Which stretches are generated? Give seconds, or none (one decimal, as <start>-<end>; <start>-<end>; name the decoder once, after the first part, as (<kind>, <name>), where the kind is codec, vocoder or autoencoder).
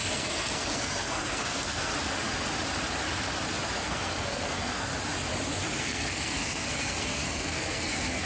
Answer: 0.0-1.9 (codec, SNAC); 3.8-4.9; 5.8-8.3